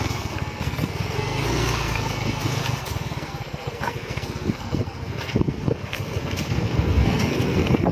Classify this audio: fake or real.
fake